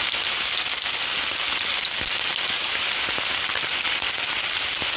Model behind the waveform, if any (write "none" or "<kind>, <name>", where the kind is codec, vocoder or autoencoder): none